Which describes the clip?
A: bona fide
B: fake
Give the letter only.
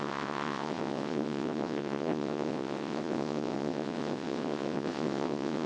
B